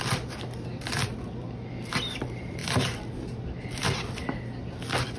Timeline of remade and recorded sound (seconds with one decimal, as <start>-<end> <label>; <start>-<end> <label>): 0.0-5.2 recorded